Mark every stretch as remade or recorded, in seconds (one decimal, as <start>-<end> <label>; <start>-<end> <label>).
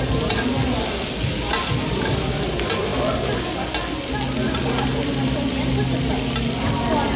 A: 0.0-7.2 recorded